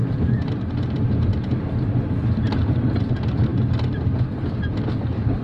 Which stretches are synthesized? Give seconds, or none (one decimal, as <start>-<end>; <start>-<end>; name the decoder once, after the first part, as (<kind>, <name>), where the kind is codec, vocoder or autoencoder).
none